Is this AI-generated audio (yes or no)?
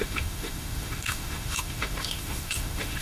yes